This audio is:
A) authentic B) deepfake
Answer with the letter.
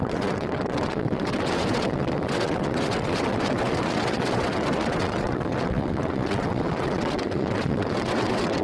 B